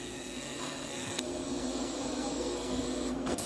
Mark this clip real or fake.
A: fake